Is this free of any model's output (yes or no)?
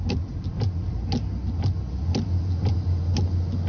yes